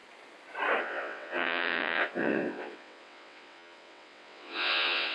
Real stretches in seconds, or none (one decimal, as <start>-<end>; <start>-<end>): 0.0-0.8